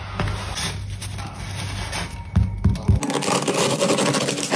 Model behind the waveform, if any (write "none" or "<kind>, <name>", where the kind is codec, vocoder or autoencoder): none